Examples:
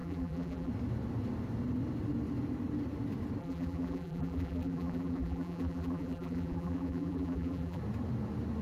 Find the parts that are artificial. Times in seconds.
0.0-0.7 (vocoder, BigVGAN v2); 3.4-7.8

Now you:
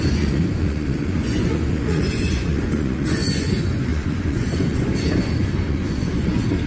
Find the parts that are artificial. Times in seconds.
0.0-6.7 (vocoder, Vocos)

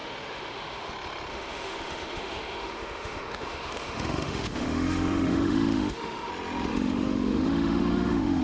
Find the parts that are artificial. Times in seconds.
0.0-0.9 (autoencoder, DAC-VAE); 1.3-6.3; 6.7-8.4

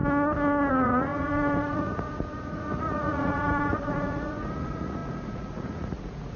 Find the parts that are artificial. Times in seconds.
0.7-6.4 (vocoder, Vocos)

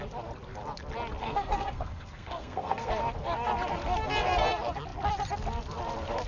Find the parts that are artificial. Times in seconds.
1.2-2.9 (codec, SNAC)

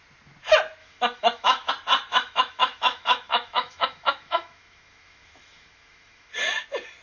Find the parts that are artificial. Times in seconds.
0.8-1.7 (autoencoder, DAC-VAE); 2.1-6.3

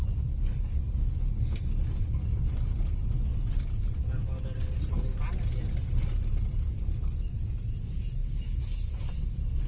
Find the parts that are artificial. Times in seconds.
none